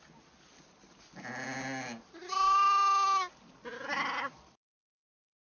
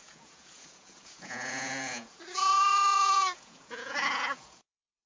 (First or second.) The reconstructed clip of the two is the second